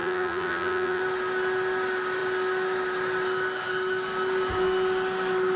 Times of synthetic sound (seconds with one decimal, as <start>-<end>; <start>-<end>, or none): 0.0-1.0